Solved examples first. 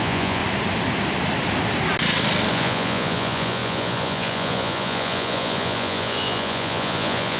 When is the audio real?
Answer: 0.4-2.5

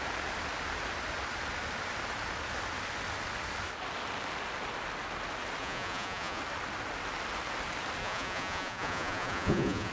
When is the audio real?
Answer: 0.0-5.6; 6.4-8.0

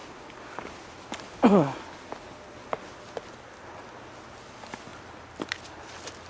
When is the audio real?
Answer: 0.0-6.3